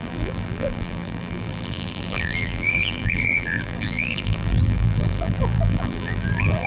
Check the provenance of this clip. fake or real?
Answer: fake